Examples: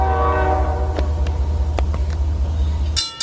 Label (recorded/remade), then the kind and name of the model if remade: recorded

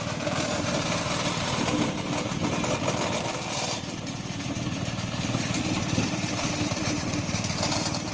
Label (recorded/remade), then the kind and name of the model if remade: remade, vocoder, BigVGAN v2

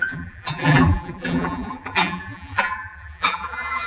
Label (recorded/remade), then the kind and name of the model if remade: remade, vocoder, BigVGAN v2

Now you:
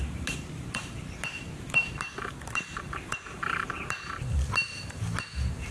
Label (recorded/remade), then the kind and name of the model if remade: remade, vocoder, BigVGAN v2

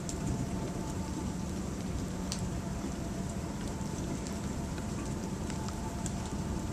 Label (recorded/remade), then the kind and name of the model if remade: remade, vocoder, BigVGAN v2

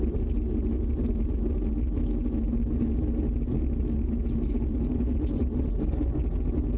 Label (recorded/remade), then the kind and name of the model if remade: recorded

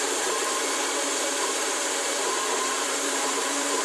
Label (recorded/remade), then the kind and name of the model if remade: remade, vocoder, BigVGAN v2